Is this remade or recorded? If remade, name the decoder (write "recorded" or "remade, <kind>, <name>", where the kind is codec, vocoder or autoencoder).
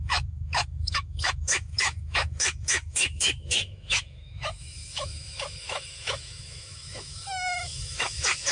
remade, autoencoder, DAC-VAE